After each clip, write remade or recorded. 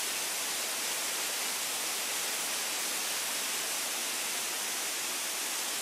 recorded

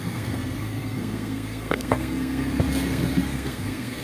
remade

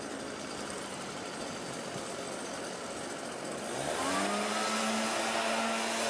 recorded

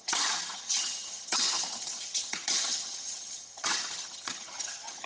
remade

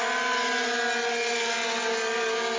recorded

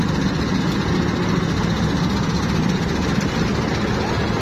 recorded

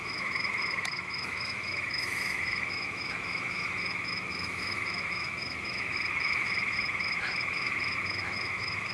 remade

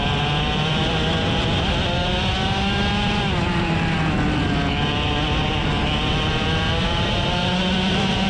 recorded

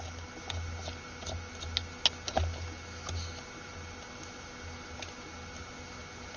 recorded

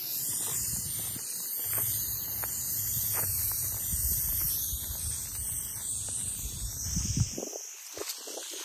recorded